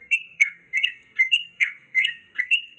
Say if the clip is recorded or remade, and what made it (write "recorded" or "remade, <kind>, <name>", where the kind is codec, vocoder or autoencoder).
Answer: remade, codec, SNAC